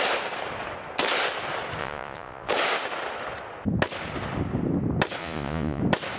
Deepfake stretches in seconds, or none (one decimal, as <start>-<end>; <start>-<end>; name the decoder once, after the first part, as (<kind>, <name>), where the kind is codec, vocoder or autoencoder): 1.8-2.5 (vocoder, Vocos); 5.2-5.8